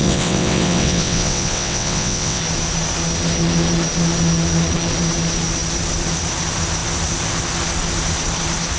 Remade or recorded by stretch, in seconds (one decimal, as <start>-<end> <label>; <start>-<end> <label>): 0.0-2.4 remade; 2.4-8.8 recorded